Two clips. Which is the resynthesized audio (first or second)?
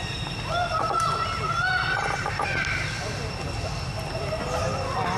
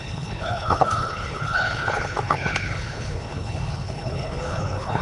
second